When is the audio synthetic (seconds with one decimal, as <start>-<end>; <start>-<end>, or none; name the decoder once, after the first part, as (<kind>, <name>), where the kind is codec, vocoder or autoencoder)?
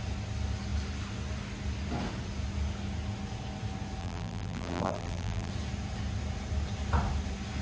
4.0-5.5 (vocoder, BigVGAN v2)